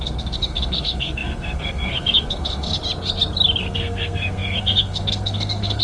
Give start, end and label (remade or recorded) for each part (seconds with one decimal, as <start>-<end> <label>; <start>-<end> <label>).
0.0-2.8 remade; 2.8-3.6 recorded; 3.6-5.8 remade